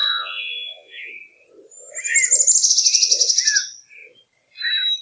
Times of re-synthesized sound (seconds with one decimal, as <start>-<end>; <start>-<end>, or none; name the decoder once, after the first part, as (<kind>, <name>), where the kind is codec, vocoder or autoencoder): 0.0-1.1 (vocoder, Vocos)